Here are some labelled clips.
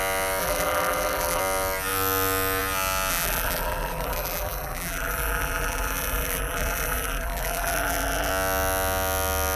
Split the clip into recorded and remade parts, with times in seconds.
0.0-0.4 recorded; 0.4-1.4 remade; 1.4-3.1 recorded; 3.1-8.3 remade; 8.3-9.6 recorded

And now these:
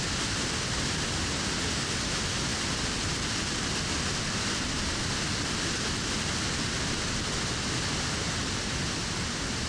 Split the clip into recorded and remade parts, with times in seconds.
0.0-2.5 recorded; 2.5-5.9 remade; 5.9-8.4 recorded; 8.4-9.2 remade; 9.2-9.7 recorded

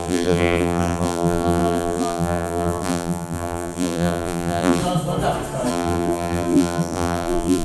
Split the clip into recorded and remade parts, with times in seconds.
0.0-4.8 remade; 4.8-5.7 recorded; 5.7-7.6 remade

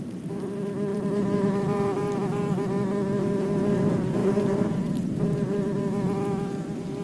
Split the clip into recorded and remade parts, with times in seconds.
0.0-0.9 recorded; 0.9-2.6 remade; 2.6-4.2 recorded; 4.2-5.9 remade; 5.9-7.0 recorded

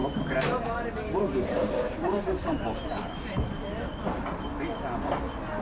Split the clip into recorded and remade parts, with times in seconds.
0.0-3.4 remade; 3.4-5.6 recorded